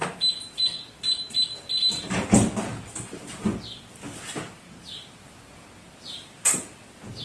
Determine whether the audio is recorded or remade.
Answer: recorded